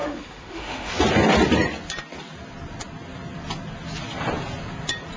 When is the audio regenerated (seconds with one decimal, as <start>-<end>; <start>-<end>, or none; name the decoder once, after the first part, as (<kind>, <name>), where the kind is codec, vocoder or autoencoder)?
0.0-0.9 (autoencoder, DAC-VAE)